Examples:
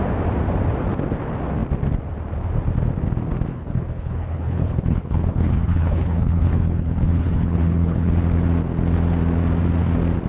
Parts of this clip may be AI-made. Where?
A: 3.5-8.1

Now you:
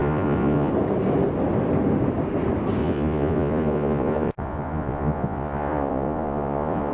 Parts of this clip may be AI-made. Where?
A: 0.0-0.7; 2.8-6.9

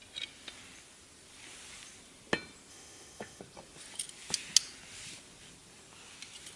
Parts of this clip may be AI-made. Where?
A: 2.7-3.4

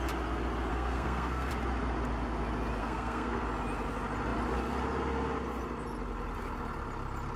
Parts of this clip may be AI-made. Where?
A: 0.7-1.5; 2.8-3.4